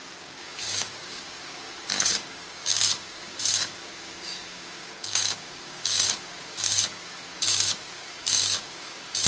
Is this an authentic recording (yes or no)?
no